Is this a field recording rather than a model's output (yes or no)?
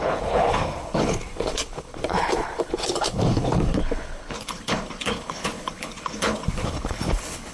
no